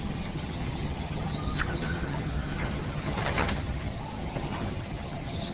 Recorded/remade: remade